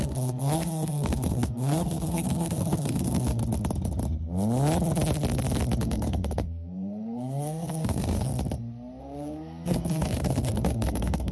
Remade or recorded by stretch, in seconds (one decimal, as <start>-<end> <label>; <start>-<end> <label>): 0.0-3.4 remade; 3.4-5.8 recorded; 5.8-8.3 remade; 8.3-9.0 recorded; 9.0-11.3 remade